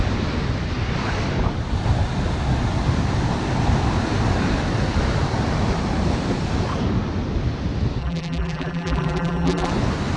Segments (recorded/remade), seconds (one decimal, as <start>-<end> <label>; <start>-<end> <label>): 0.0-8.0 recorded; 8.0-9.7 remade; 9.7-10.2 recorded